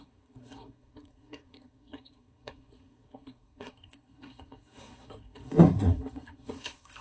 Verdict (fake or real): fake